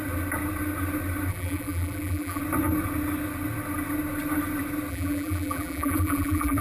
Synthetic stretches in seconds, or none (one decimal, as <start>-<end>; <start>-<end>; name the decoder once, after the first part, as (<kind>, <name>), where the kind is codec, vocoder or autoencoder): 1.3-2.4 (vocoder, BigVGAN v2); 4.9-6.6